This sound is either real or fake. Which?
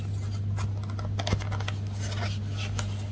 real